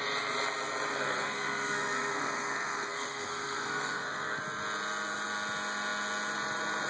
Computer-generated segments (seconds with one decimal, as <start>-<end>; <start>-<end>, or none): 0.9-4.4